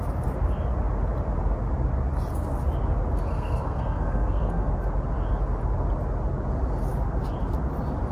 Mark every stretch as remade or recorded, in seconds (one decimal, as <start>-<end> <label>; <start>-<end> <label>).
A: 0.0-3.3 recorded; 3.3-4.7 remade; 4.7-8.1 recorded